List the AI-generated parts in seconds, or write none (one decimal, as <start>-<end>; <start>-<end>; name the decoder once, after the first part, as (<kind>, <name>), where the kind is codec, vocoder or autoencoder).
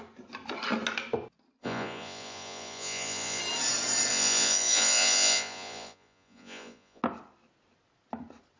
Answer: 1.6-3.4 (vocoder, Vocos); 4.1-7.0